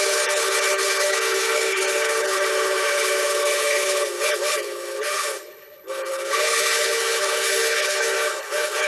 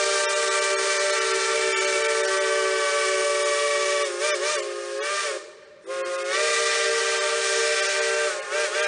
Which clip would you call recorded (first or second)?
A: second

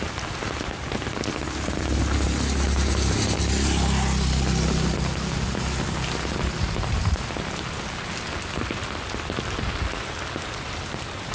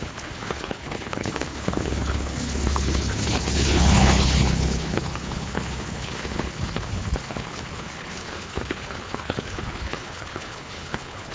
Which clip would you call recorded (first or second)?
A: first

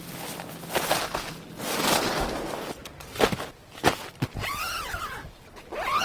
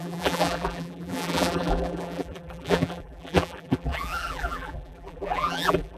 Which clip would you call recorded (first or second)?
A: first